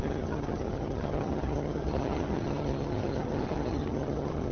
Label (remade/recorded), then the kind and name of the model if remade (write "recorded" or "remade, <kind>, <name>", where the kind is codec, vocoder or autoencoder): remade, vocoder, HiFi-GAN